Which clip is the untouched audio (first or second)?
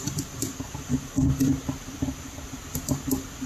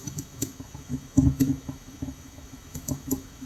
first